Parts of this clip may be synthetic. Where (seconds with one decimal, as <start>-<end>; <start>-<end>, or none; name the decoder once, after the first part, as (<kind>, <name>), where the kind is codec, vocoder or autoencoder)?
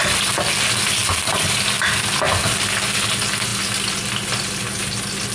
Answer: 0.0-1.1 (vocoder, BigVGAN v2)